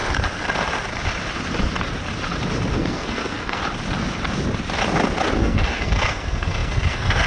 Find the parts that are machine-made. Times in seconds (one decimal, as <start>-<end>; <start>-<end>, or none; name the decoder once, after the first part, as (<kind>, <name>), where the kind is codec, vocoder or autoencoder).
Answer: 2.7-3.6 (codec, SNAC); 5.4-7.3